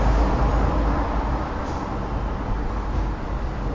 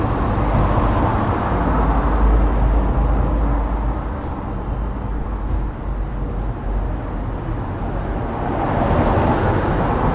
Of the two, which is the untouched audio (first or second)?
second